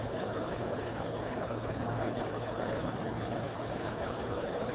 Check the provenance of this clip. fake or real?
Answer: fake